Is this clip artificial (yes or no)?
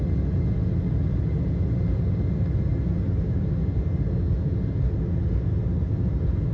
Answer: no